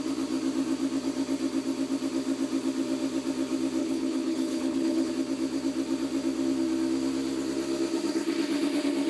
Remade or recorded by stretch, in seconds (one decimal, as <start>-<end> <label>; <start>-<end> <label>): 0.0-3.8 recorded; 3.8-5.1 remade; 5.1-9.1 recorded